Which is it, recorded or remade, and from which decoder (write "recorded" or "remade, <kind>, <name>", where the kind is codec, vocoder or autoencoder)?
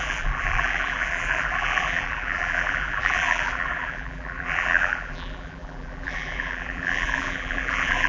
remade, vocoder, BigVGAN v2